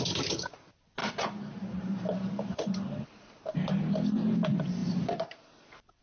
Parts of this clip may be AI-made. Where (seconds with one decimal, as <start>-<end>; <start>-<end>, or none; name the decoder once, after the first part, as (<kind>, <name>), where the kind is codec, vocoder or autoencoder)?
1.0-3.8 (vocoder, BigVGAN v2); 4.8-6.0